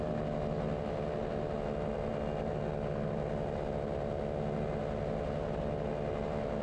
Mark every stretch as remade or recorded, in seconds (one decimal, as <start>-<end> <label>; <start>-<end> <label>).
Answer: 0.0-6.6 recorded